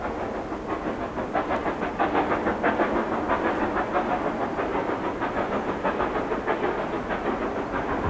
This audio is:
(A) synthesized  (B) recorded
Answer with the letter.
B